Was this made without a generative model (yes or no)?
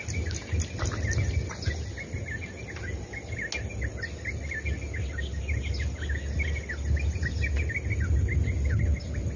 yes